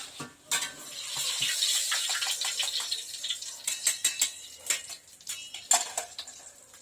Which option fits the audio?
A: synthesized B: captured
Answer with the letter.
B